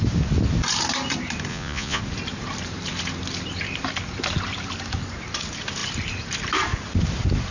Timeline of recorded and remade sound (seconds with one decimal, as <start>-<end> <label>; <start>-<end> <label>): 0.0-1.5 recorded; 1.5-2.0 remade; 2.0-7.5 recorded